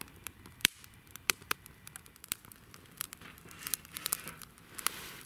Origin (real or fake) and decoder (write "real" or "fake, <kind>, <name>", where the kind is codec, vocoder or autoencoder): fake, vocoder, BigVGAN v2